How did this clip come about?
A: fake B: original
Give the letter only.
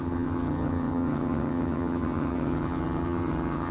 A